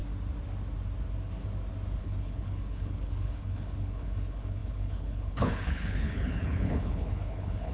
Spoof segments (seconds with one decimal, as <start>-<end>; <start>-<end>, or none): 2.0-7.7